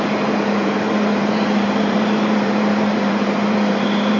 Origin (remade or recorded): remade